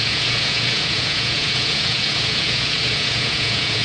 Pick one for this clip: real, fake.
fake